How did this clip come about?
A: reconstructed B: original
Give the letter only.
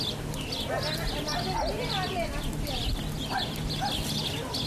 B